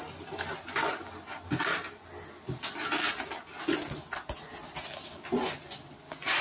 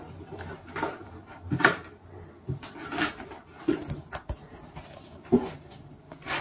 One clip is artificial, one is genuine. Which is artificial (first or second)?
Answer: second